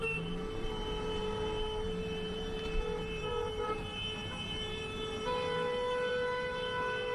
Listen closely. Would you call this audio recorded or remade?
remade